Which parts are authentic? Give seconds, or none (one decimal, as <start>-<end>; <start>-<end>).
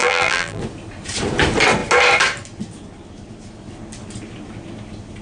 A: 0.6-5.2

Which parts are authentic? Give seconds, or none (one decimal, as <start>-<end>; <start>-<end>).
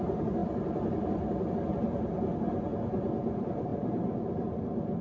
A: 0.0-0.4; 1.5-5.0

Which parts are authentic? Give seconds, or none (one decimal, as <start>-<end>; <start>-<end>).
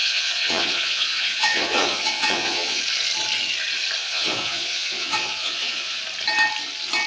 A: 2.8-4.0; 6.0-7.1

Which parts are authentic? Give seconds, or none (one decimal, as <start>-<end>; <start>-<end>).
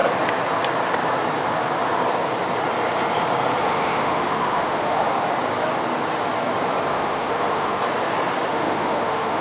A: 0.0-3.6; 5.1-6.9; 7.8-8.5